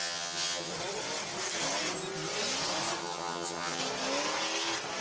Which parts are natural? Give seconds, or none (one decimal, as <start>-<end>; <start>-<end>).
0.7-3.0; 3.8-5.0